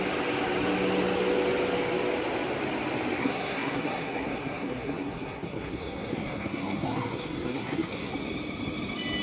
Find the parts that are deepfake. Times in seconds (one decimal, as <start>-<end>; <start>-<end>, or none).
3.2-8.1